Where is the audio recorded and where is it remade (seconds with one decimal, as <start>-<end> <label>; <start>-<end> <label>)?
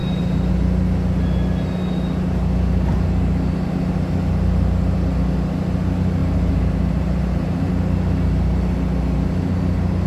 0.0-0.5 remade; 0.5-6.2 recorded; 6.2-7.7 remade; 7.7-10.1 recorded